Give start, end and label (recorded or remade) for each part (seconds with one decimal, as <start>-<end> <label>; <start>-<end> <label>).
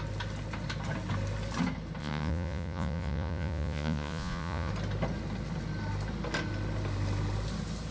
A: 0.0-2.0 recorded; 2.0-4.7 remade; 4.7-7.9 recorded